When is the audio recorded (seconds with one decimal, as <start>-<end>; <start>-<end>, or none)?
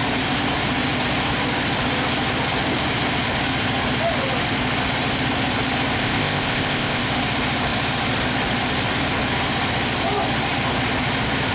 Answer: 0.0-6.0; 7.0-11.5